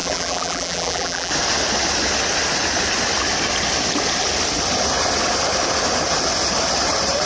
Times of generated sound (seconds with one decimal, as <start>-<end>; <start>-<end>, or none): 0.0-1.3